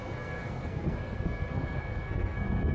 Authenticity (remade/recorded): remade